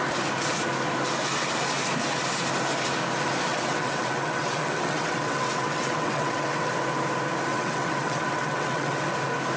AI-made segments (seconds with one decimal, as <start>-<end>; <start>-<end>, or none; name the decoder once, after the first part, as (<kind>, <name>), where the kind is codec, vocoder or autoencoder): 3.5-6.7 (vocoder, WaveNeXt); 7.5-9.0